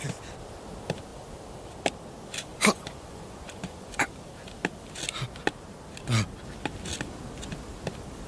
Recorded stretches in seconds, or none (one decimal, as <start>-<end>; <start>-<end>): 0.0-2.5; 4.1-8.3